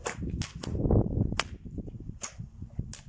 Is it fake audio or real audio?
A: real